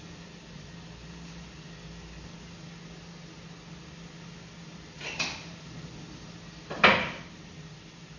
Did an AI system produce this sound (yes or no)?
no